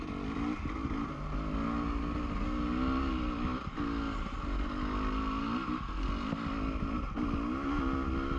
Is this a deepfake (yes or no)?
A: no